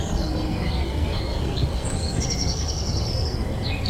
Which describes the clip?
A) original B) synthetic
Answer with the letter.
B